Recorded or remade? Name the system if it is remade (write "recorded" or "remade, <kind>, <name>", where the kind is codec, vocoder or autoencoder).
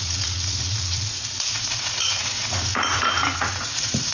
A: remade, vocoder, Vocos